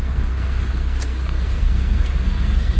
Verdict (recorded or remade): remade